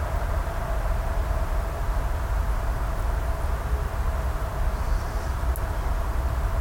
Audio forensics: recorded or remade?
recorded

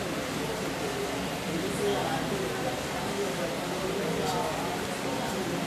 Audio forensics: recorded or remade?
recorded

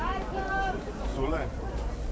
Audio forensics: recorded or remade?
remade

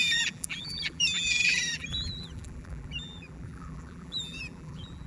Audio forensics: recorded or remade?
remade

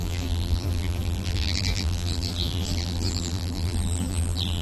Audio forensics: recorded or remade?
remade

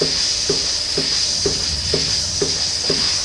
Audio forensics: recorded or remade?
recorded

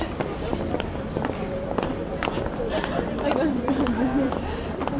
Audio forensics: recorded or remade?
remade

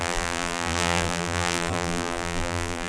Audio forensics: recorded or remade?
remade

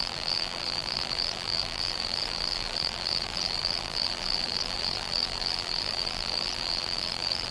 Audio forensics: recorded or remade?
remade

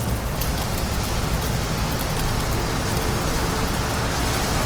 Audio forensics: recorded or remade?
recorded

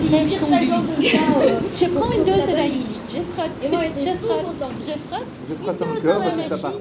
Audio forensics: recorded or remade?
recorded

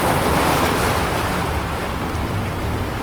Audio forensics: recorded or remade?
recorded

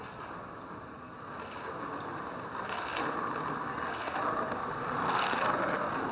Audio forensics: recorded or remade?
recorded